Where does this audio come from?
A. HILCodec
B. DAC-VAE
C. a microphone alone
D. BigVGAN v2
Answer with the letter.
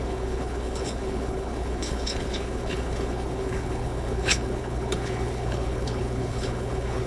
A